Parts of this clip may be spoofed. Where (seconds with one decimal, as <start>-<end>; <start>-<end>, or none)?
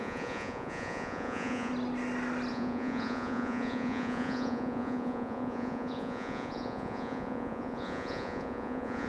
0.0-1.7; 2.5-9.1